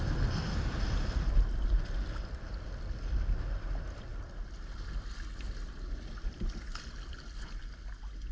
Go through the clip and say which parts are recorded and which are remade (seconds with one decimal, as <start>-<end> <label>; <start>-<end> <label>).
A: 0.0-8.3 recorded